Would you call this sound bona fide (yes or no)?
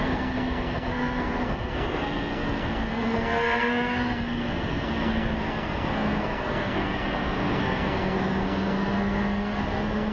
no